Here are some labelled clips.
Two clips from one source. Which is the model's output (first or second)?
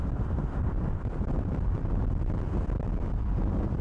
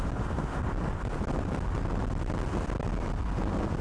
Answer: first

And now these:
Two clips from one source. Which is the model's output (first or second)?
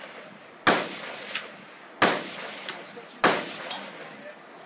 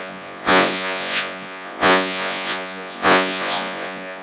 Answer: second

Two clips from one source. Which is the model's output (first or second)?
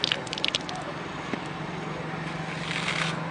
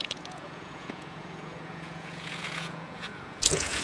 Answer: second